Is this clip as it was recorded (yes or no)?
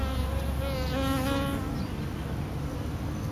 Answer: yes